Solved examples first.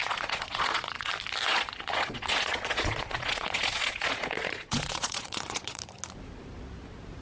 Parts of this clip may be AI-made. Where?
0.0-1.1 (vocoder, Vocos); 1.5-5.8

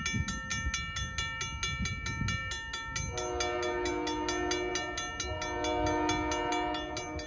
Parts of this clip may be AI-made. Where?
none

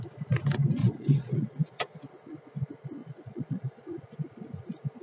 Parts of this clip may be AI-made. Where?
0.8-2.0 (vocoder, Vocos); 3.0-3.8

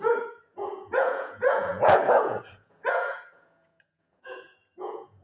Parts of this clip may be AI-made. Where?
0.0-5.2 (vocoder, Vocos)

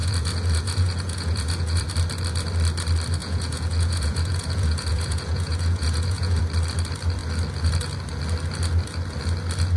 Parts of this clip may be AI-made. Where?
0.0-1.9 (vocoder, Vocos); 3.2-6.4

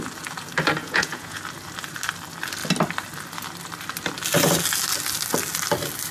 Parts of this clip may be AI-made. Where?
0.8-1.4 (vocoder, Vocos)

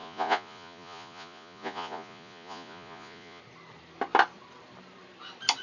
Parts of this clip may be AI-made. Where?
0.0-3.4 (vocoder, Vocos)